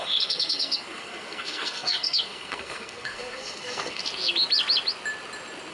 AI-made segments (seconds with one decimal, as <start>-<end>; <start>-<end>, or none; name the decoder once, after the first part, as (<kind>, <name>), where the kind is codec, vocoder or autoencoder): 0.0-4.0 (codec, SNAC)